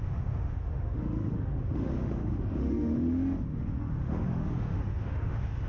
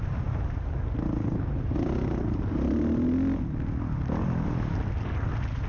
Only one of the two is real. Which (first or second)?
second